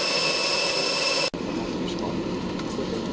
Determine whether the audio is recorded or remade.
recorded